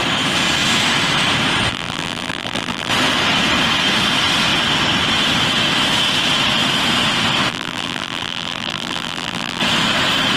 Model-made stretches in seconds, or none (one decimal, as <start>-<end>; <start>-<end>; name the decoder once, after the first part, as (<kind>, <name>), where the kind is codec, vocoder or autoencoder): 1.7-2.9 (vocoder, BigVGAN v2); 7.5-9.6